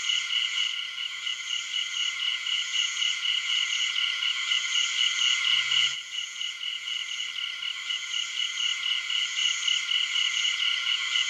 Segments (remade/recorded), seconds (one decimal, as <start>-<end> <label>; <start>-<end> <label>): 0.0-7.3 remade; 7.3-7.8 recorded; 7.8-9.4 remade; 9.4-10.2 recorded; 10.2-11.3 remade